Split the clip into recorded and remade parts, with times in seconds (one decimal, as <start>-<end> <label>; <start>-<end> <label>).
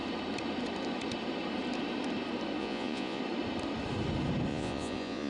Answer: 0.0-2.6 recorded; 2.6-3.2 remade; 3.2-4.5 recorded; 4.5-5.3 remade